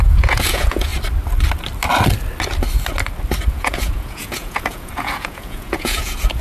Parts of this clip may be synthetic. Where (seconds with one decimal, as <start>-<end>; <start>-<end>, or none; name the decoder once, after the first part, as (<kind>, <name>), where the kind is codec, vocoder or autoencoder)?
0.0-0.9 (vocoder, Vocos); 3.5-6.4